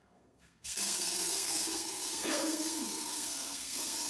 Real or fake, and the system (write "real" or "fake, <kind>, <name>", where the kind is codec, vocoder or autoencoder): fake, codec, SNAC